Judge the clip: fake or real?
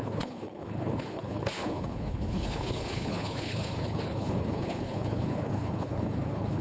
fake